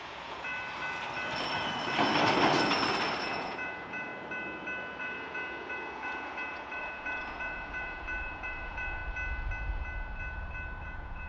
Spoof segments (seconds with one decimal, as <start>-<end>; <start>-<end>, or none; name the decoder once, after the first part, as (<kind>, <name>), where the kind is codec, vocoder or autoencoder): 0.0-0.5 (vocoder, Vocos); 3.2-4.1; 5.0-9.0; 10.8-11.3